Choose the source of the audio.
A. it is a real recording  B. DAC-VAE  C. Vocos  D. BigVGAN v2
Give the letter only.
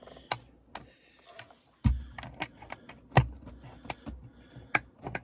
A